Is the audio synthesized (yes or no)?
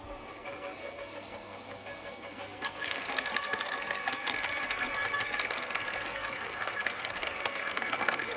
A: yes